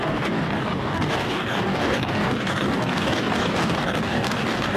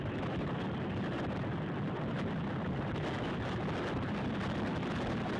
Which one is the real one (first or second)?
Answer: second